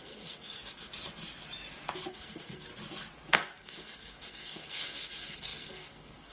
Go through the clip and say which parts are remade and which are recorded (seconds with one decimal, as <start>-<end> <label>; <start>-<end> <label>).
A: 0.0-0.9 remade; 0.9-2.1 recorded; 2.1-2.7 remade; 2.7-3.3 recorded; 3.3-6.3 remade